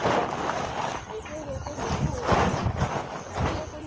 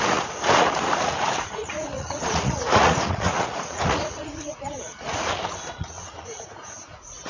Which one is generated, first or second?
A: second